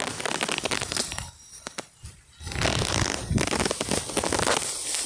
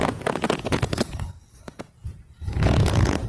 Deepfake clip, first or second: second